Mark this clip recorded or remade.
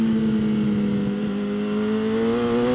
recorded